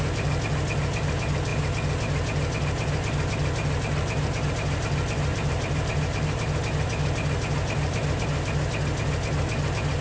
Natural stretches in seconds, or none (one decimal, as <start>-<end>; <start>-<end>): 0.0-5.3; 6.6-10.0